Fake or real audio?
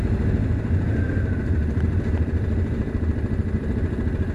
fake